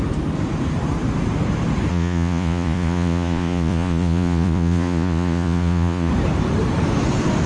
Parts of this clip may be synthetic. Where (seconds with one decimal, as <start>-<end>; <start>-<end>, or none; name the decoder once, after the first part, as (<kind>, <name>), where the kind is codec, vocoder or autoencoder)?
1.9-6.1 (vocoder, Vocos)